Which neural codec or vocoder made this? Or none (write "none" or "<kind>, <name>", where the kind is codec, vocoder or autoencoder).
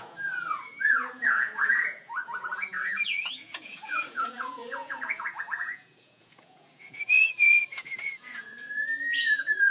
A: vocoder, Vocos